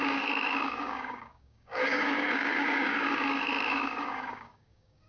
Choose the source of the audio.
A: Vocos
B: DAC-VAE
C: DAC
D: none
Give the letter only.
C